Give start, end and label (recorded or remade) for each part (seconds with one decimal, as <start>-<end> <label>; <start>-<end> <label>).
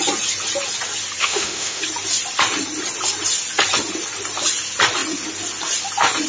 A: 0.0-1.2 recorded; 1.2-1.8 remade; 1.8-6.3 recorded